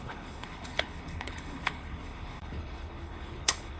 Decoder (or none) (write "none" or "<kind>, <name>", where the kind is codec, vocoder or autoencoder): codec, HILCodec